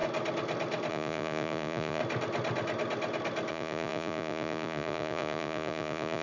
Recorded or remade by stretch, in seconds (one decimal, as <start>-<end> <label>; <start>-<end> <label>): 0.0-0.9 recorded; 0.9-2.0 remade; 2.0-3.5 recorded; 3.5-6.2 remade